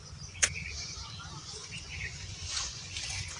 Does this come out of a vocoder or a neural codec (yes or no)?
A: yes